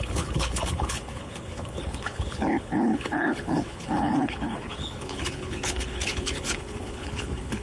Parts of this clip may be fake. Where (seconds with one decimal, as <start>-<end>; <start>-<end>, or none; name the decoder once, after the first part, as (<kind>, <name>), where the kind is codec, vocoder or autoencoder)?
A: 0.0-7.6 (codec, HILCodec)